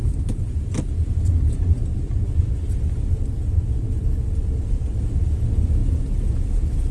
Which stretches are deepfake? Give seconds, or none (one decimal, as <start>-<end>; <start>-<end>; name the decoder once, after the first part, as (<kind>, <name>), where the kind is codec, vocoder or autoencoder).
none